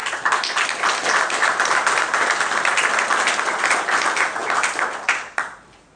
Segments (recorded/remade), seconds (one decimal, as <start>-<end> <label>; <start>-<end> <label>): 0.0-6.0 recorded